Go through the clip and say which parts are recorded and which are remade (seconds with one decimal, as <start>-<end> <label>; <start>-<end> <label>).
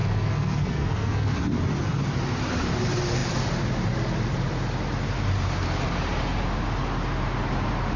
0.0-1.5 remade; 1.5-8.0 recorded